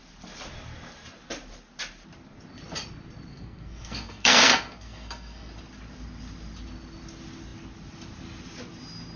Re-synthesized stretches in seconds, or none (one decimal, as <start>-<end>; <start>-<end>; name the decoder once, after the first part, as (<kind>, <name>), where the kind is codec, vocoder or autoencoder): 3.3-5.5 (codec, SNAC)